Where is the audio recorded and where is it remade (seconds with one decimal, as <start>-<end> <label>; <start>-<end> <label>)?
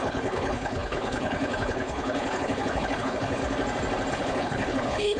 0.0-3.4 remade; 3.4-4.1 recorded; 4.1-5.2 remade